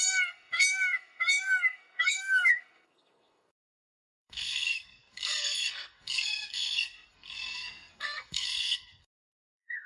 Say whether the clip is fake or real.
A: fake